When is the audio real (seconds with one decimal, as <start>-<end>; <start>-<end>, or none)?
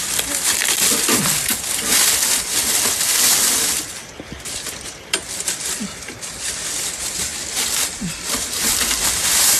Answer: 0.0-9.6